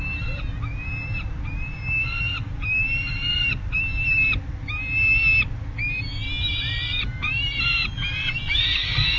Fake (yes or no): no